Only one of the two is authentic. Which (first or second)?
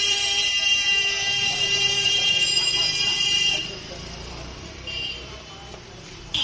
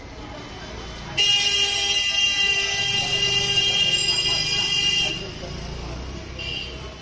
second